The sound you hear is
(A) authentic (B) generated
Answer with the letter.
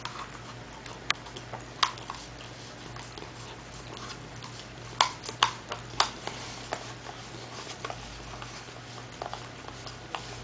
A